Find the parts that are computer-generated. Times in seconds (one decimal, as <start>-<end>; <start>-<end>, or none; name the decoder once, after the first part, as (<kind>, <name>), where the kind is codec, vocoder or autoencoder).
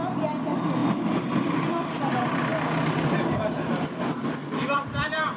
0.0-0.8 (vocoder, BigVGAN v2); 2.1-2.5; 4.5-5.4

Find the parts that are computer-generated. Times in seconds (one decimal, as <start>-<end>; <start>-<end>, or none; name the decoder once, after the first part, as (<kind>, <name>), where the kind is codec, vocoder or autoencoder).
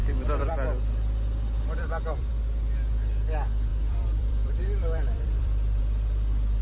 0.0-2.3 (vocoder, BigVGAN v2); 3.7-5.8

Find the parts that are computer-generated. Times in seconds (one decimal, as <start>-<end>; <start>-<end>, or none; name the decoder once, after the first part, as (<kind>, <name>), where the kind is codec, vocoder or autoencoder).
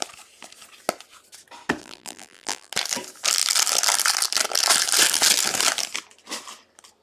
1.8-2.7 (vocoder, BigVGAN v2)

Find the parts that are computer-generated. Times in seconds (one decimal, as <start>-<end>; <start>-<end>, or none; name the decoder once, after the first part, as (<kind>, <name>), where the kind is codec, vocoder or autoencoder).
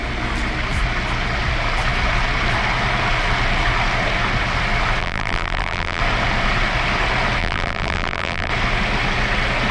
5.0-6.0 (vocoder, BigVGAN v2); 7.4-8.5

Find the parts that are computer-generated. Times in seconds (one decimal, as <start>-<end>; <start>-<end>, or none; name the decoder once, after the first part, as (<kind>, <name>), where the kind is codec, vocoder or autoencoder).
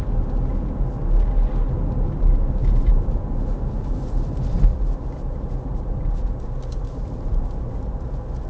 2.6-3.3 (vocoder, BigVGAN v2); 4.7-8.0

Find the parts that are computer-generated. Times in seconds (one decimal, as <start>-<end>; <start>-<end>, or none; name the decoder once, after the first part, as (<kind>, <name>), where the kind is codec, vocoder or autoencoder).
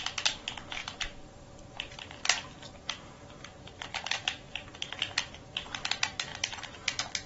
0.8-5.2 (vocoder, BigVGAN v2); 6.3-6.8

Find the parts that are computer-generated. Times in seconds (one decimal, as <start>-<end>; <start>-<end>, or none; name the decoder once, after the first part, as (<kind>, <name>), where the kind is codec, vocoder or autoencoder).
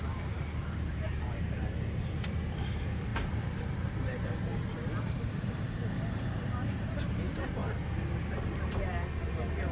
0.0-4.5 (vocoder, BigVGAN v2); 5.1-7.6; 9.2-9.7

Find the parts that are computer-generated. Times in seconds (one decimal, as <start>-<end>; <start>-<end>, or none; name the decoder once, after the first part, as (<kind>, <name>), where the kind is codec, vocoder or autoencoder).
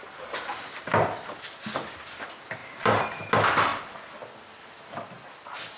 2.6-3.3 (vocoder, BigVGAN v2)